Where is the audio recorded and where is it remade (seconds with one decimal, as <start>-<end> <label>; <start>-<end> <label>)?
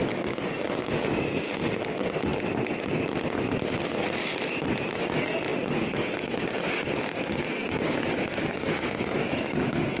0.0-0.6 recorded; 0.6-1.5 remade; 1.5-5.5 recorded; 5.5-10.0 remade